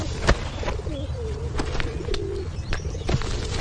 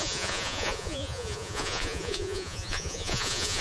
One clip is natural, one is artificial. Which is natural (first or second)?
first